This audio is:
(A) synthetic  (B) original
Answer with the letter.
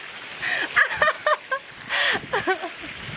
B